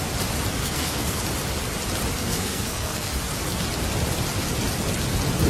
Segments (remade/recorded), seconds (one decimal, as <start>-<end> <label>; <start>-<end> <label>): 0.0-0.6 recorded; 0.6-1.2 remade; 1.2-2.2 recorded; 2.2-3.1 remade; 3.1-5.5 recorded